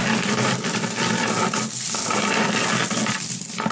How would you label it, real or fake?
real